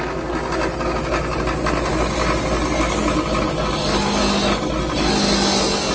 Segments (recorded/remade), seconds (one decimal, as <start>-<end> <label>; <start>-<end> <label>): 0.0-5.9 recorded